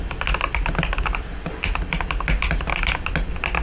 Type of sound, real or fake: real